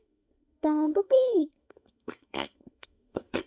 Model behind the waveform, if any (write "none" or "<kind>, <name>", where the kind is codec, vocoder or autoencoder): codec, SNAC